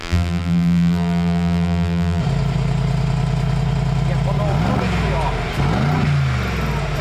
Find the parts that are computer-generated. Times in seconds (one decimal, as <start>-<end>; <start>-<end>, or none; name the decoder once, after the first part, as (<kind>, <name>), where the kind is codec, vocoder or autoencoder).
0.0-2.2 (vocoder, BigVGAN v2)